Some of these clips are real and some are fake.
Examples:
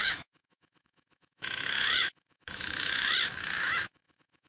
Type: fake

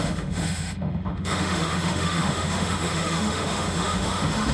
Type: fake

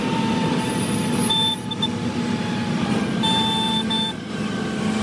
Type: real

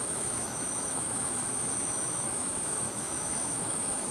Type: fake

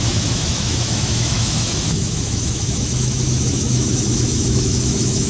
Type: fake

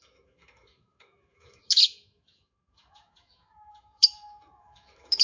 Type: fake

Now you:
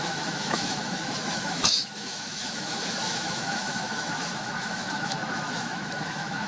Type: fake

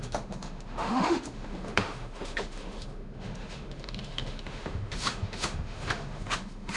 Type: fake